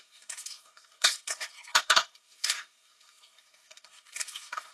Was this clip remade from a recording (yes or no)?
yes